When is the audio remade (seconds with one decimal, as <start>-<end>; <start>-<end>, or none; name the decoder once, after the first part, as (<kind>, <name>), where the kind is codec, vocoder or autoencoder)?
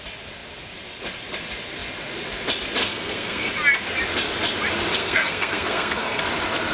2.8-3.5 (codec, SNAC); 5.0-6.2